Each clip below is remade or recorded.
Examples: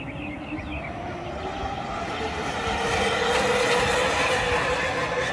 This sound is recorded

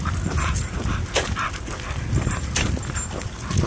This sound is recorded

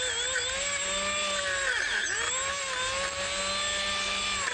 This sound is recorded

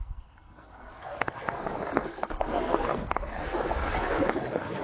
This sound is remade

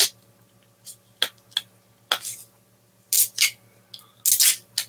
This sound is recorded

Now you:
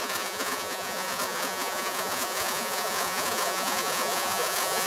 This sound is remade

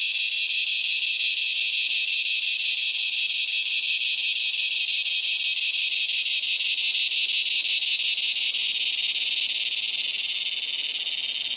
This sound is recorded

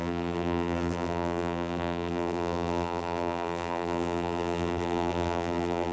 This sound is remade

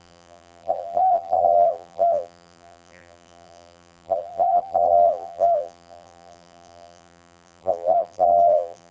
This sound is remade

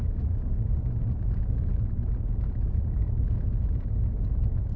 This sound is remade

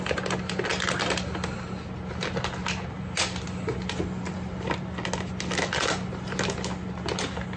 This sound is recorded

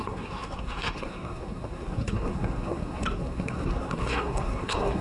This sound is remade